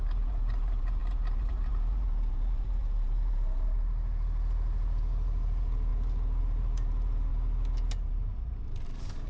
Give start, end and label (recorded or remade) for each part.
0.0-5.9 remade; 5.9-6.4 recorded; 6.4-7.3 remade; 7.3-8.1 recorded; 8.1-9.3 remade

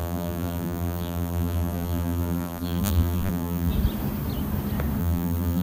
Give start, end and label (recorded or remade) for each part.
0.0-3.7 remade; 3.7-5.0 recorded; 5.0-5.6 remade

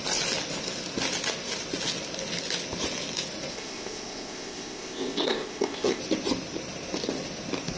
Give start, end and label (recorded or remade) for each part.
0.0-3.5 recorded; 3.5-6.0 remade; 6.0-7.8 recorded

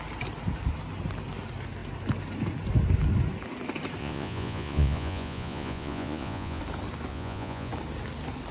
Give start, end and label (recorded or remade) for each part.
0.0-4.0 recorded; 4.0-6.6 remade; 6.6-7.1 recorded; 7.1-7.7 remade; 7.7-8.5 recorded

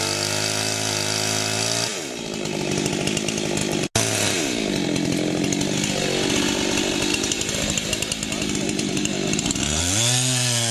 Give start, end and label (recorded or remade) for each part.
0.0-1.9 recorded; 1.9-2.9 remade; 2.9-7.1 recorded; 7.1-9.8 remade; 9.8-10.7 recorded

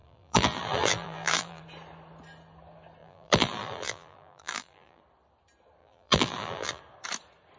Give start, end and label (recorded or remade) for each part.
0.0-1.6 remade; 1.6-3.0 recorded; 3.0-5.0 remade; 5.0-5.8 recorded; 5.8-6.8 remade; 6.8-7.6 recorded

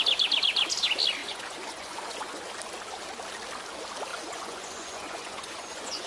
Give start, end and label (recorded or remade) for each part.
0.0-1.2 recorded; 1.2-2.4 remade; 2.4-4.1 recorded; 4.1-6.1 remade

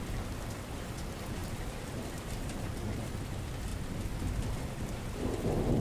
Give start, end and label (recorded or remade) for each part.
0.0-1.4 recorded; 1.4-3.0 remade; 3.0-5.8 recorded